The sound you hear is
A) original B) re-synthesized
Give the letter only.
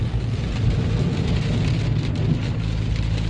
A